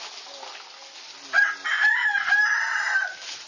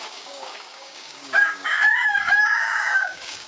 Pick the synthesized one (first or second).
second